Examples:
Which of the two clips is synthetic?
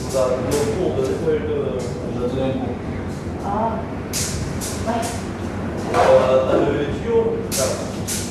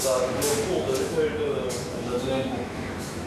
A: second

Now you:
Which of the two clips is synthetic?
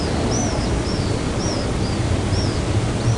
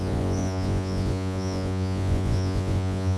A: second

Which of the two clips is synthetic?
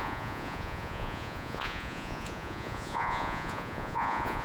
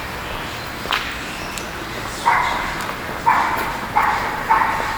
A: first